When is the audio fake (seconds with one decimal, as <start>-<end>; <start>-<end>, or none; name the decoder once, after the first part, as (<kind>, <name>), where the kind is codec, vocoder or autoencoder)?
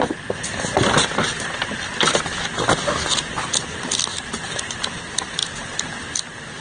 0.0-2.5 (vocoder, BigVGAN v2); 3.8-5.4